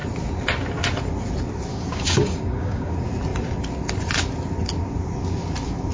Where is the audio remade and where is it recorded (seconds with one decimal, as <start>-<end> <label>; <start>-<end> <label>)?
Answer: 0.0-1.7 recorded; 1.7-2.9 remade; 2.9-5.9 recorded